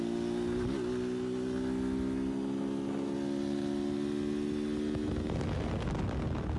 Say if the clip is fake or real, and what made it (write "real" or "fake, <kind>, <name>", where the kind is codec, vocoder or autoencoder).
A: real